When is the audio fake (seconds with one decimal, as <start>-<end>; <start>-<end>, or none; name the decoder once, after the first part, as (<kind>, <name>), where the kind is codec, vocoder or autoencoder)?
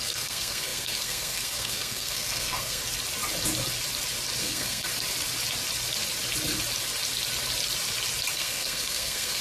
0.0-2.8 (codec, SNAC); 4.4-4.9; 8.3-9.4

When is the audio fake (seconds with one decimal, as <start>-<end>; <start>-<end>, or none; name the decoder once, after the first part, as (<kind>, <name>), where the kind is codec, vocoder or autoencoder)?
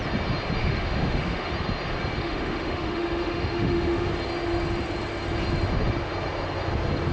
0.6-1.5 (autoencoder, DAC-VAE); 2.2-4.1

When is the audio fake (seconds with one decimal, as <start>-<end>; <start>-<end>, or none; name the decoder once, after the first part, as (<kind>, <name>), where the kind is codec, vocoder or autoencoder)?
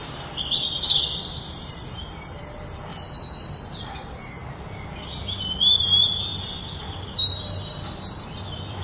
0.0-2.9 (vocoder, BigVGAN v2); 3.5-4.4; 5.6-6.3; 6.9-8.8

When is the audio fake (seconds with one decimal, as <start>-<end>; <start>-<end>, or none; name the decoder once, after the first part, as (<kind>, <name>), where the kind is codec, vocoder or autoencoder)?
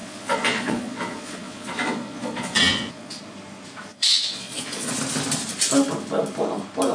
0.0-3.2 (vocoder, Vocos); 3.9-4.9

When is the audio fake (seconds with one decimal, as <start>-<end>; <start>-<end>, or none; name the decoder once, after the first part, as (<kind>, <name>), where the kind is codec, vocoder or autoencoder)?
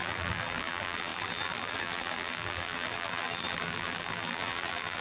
0.0-5.0 (vocoder, BigVGAN v2)